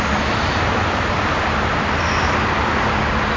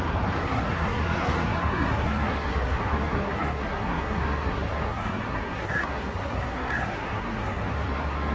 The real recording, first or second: first